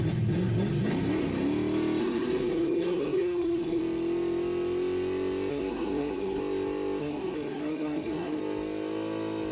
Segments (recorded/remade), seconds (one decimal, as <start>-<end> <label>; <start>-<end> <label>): 0.0-2.0 recorded; 2.0-3.8 remade; 3.8-5.5 recorded; 5.5-6.4 remade; 6.4-7.0 recorded; 7.0-8.4 remade; 8.4-9.5 recorded